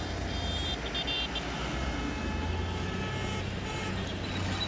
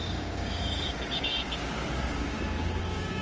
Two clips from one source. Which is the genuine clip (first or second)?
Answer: first